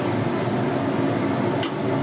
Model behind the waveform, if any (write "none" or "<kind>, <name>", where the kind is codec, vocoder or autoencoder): none